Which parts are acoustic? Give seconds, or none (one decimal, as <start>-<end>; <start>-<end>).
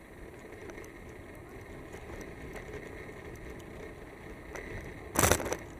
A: 0.0-5.8